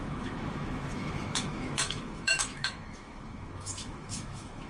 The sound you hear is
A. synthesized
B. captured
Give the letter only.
A